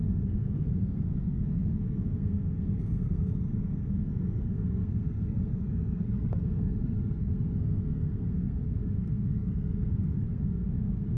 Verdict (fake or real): fake